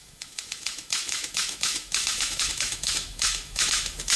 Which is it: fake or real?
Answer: fake